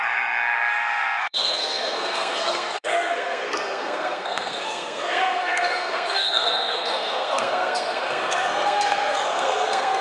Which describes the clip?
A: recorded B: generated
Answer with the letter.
B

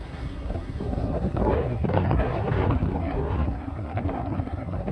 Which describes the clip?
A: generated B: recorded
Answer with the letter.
A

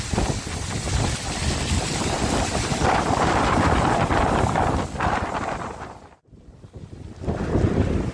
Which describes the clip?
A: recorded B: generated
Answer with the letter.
A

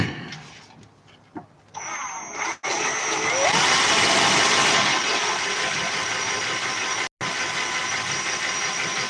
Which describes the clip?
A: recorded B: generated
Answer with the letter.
A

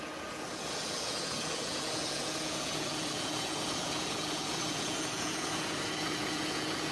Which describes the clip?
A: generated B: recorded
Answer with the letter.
A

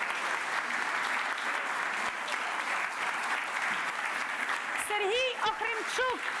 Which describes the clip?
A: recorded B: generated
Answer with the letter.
A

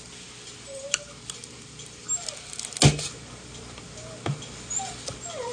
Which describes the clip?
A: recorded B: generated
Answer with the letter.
A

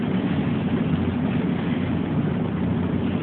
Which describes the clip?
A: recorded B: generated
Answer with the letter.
A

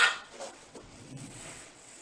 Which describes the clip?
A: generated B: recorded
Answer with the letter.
A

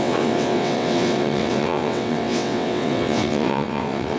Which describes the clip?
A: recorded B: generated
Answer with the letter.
B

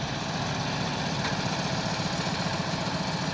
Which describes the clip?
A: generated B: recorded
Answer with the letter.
B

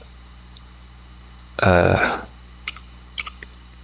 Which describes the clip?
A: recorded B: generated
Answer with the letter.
B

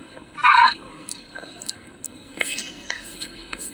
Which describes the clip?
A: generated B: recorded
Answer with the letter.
A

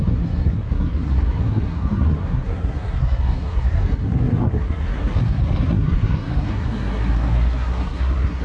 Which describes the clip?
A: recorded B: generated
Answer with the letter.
B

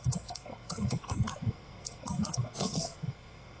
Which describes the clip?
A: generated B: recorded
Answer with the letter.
A